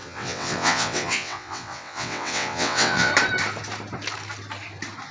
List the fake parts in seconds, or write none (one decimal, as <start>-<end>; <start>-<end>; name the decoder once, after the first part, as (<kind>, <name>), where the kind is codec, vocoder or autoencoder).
0.0-3.1 (vocoder, WaveNeXt)

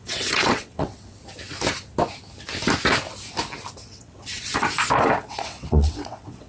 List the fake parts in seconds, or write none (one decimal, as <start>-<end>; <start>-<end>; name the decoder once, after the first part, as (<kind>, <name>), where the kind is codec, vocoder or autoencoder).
0.0-1.2 (vocoder, WaveNeXt); 3.8-4.5; 5.2-6.5

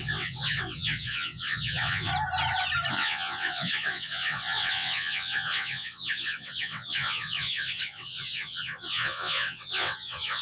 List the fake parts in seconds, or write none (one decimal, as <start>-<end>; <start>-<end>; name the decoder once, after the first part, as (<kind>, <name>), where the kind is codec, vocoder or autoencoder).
0.0-2.1 (vocoder, WaveNeXt); 2.9-10.4

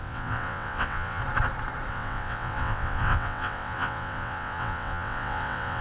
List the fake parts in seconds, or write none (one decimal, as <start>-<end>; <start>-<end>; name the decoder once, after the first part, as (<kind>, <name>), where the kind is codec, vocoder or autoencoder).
0.0-1.2 (vocoder, WaveNeXt); 1.9-5.8

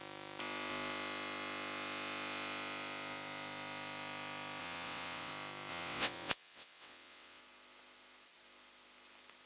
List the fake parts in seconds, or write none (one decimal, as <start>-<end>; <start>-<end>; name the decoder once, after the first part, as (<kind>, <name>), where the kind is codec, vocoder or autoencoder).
4.6-5.3 (vocoder, WaveNeXt); 5.7-7.4

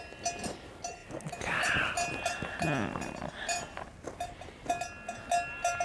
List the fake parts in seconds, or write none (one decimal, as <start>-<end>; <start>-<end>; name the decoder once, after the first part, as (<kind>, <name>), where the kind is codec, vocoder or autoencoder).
none